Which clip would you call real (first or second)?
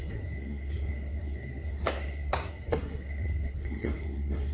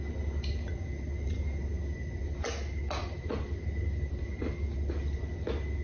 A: second